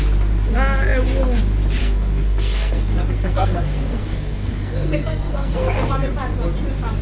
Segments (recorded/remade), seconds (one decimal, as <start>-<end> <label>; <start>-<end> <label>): 0.0-1.8 recorded; 1.8-5.9 remade; 5.9-7.0 recorded